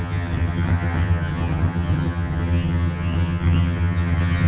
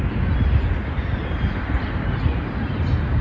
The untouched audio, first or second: second